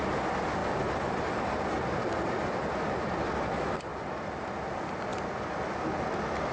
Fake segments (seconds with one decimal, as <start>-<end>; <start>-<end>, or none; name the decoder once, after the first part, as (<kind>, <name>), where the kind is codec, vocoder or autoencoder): 0.6-2.8 (vocoder, BigVGAN v2); 3.9-4.4